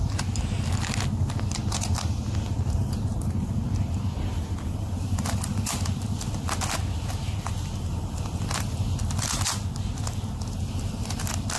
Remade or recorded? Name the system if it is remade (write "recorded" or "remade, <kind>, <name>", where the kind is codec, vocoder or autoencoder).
recorded